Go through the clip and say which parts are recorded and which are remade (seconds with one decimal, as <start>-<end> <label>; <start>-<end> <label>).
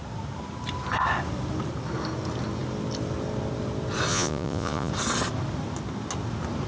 0.0-4.1 recorded; 4.1-4.9 remade; 4.9-6.7 recorded